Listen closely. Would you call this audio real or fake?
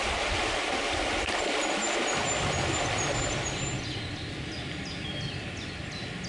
real